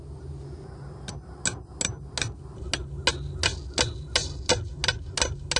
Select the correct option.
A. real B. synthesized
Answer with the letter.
A